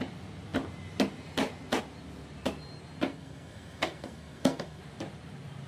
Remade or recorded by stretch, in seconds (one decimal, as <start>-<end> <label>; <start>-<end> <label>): 0.0-3.1 recorded; 3.1-4.8 remade; 4.8-5.7 recorded